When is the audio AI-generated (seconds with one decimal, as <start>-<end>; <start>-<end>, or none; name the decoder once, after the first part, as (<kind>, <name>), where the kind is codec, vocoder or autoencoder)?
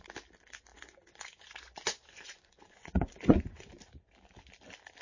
0.7-3.7 (vocoder, Vocos)